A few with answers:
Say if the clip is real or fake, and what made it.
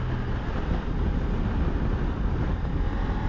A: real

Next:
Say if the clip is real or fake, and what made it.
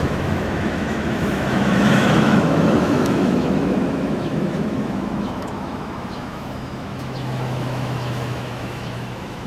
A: fake, autoencoder, DAC-VAE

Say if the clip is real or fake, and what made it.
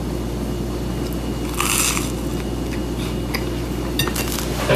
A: real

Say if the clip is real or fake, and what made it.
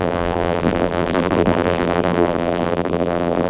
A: fake, vocoder, BigVGAN v2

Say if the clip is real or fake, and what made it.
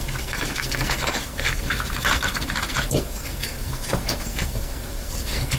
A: fake, codec, SNAC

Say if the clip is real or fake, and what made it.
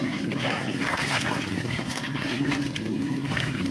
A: fake, codec, SNAC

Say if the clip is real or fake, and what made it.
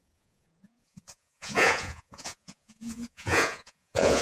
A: fake, vocoder, Vocos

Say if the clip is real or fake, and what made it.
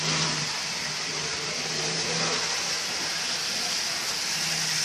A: real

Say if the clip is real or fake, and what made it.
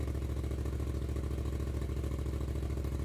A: real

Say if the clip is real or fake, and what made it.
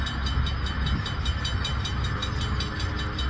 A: real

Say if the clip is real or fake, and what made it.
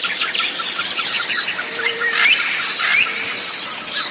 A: fake, vocoder, BigVGAN v2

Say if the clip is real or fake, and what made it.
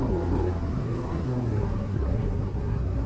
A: fake, codec, SNAC